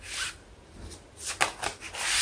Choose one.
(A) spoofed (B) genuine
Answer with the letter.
B